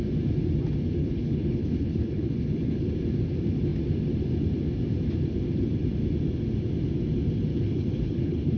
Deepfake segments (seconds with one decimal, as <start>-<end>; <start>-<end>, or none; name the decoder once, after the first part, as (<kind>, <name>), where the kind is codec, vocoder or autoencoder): 1.0-2.9 (codec, HILCodec); 7.5-8.6